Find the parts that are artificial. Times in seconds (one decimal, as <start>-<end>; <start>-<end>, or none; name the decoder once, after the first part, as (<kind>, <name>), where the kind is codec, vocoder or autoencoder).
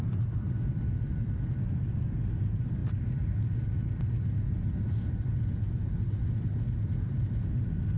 none